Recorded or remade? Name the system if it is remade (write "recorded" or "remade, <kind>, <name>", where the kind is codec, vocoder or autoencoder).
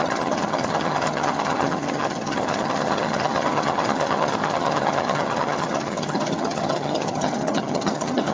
remade, vocoder, HiFi-GAN